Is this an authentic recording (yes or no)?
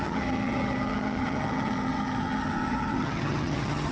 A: no